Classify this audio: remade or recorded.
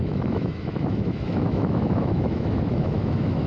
remade